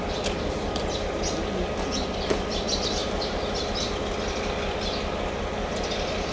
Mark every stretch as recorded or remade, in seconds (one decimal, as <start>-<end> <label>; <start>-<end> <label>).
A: 0.0-3.0 recorded; 3.0-4.1 remade; 4.1-6.3 recorded